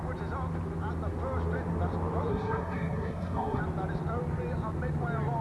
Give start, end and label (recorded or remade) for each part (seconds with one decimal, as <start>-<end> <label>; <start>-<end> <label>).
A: 0.0-2.3 recorded; 2.3-3.6 remade; 3.6-5.4 recorded